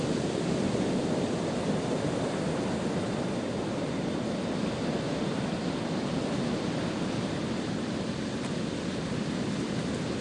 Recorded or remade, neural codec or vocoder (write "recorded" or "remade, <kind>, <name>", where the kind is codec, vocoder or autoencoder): recorded